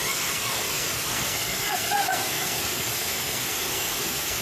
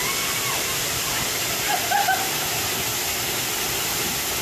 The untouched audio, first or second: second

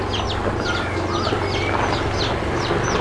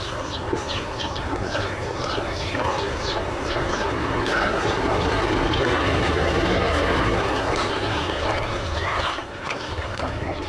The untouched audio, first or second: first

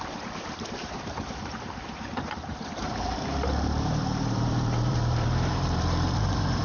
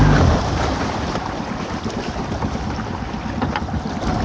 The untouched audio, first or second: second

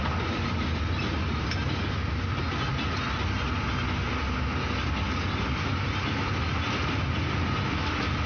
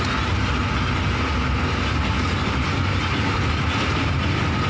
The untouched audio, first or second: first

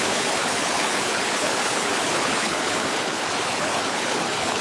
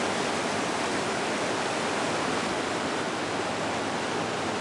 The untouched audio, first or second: second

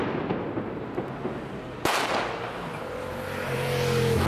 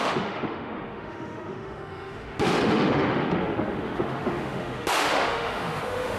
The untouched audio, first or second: first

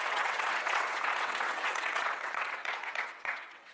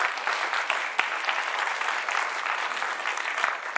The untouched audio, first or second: second